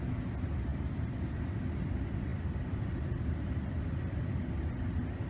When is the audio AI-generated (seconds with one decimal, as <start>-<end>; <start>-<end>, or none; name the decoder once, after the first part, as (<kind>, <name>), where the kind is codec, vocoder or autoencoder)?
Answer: none